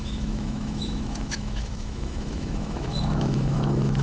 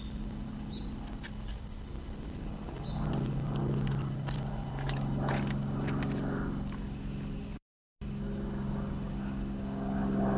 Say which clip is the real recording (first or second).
second